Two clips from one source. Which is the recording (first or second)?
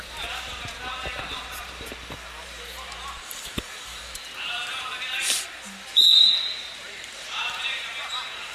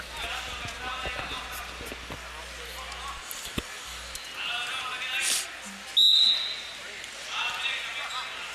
second